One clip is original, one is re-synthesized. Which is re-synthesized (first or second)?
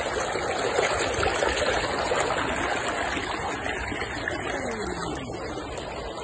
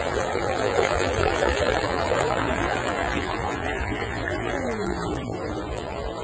second